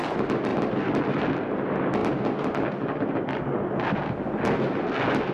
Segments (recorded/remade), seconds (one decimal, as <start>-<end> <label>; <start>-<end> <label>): 0.0-5.3 recorded